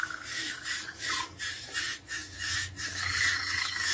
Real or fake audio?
fake